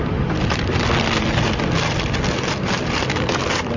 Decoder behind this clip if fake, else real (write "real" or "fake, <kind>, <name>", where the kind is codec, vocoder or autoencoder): real